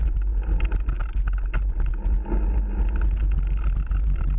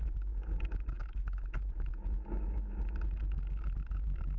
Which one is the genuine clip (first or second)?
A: first